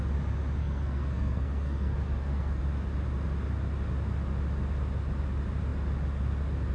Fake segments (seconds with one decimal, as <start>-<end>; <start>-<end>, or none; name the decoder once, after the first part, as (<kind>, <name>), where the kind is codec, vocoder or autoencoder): 0.6-2.6 (codec, SNAC)